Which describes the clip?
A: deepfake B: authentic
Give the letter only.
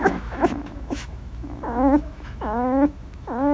A